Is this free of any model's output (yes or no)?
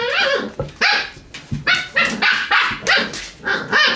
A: yes